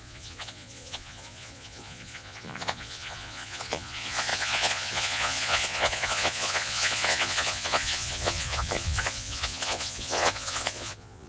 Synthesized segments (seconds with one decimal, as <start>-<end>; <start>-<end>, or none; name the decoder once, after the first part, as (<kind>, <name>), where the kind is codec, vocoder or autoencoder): 0.0-11.3 (vocoder, Vocos)